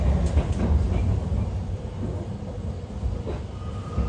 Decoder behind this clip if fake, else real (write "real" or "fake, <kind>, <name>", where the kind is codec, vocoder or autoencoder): real